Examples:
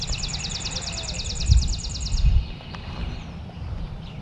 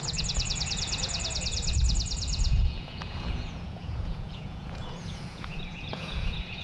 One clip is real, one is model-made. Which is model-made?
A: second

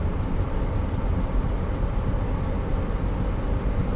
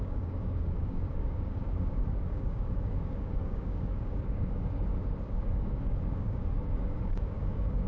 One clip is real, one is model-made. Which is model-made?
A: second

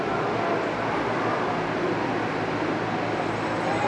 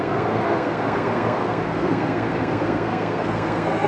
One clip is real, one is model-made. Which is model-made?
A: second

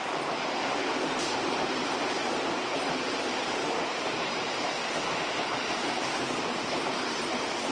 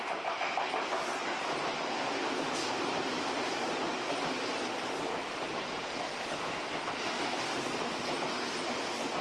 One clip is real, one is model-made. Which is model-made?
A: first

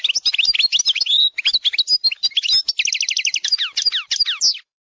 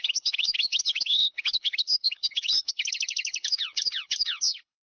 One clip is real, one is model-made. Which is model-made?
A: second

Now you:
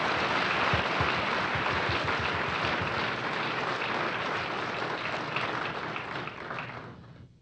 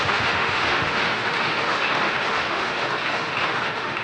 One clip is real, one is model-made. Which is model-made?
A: second